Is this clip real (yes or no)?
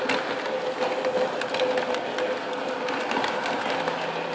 yes